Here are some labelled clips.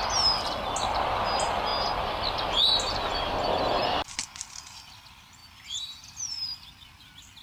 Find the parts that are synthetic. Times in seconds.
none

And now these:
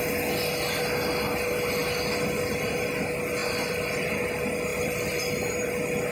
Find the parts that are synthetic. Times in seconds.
3.4-4.1 (vocoder, BigVGAN v2); 4.7-5.3

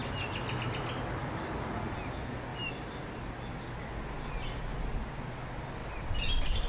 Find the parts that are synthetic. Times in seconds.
2.5-3.1 (vocoder, BigVGAN v2)

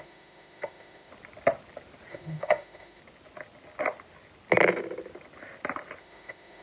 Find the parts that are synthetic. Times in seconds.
0.0-1.1 (autoencoder, DAC-VAE); 2.1-3.0; 6.0-6.6